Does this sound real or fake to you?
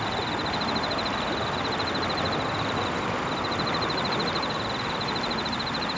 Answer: real